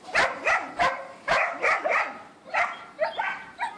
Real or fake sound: real